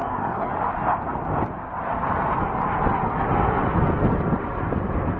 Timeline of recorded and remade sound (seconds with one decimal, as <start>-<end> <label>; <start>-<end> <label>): 0.0-0.5 remade; 0.5-5.2 recorded